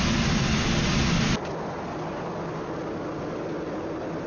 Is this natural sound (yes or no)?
yes